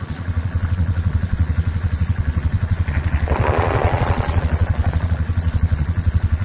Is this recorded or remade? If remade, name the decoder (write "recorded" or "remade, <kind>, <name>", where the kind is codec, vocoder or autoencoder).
remade, vocoder, Vocos